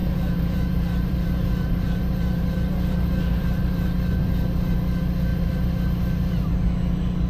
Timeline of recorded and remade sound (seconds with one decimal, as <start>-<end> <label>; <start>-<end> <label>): 0.0-3.9 remade; 3.9-5.3 recorded; 5.3-6.5 remade; 6.5-7.3 recorded

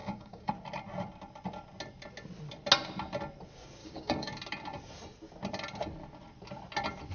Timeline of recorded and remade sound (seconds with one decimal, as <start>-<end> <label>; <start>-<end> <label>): 0.0-0.5 remade; 0.5-3.8 recorded; 3.8-4.3 remade; 4.3-7.1 recorded